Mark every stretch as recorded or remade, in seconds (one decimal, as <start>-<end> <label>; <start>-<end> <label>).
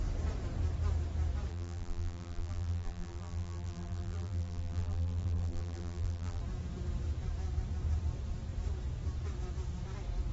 0.0-1.5 recorded; 1.5-6.4 remade; 6.4-10.3 recorded